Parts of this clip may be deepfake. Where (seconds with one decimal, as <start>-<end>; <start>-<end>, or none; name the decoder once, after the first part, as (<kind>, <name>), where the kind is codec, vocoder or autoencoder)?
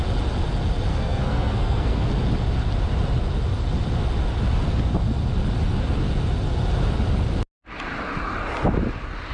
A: 0.9-2.1 (codec, SNAC)